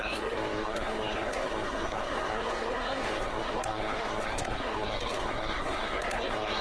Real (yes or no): no